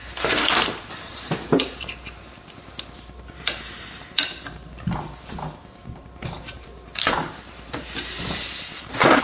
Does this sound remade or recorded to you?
remade